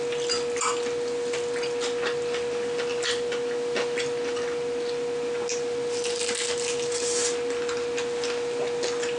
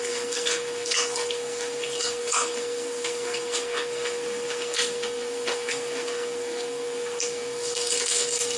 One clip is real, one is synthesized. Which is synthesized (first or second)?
second